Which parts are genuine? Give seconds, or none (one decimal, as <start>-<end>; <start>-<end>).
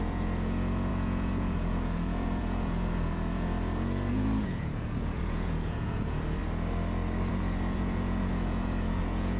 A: 6.4-7.3